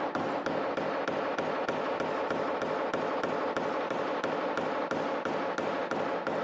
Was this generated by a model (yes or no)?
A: no